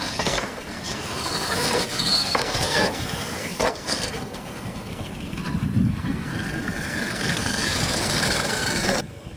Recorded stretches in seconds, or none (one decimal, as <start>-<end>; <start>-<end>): 5.4-5.9